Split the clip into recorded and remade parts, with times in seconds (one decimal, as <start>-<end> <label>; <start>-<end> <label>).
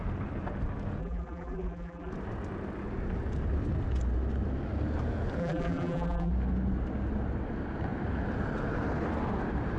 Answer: 0.0-1.0 recorded; 1.0-2.1 remade; 2.1-5.4 recorded; 5.4-6.3 remade; 6.3-9.8 recorded